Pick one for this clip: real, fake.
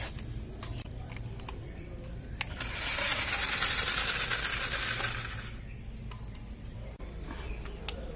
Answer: real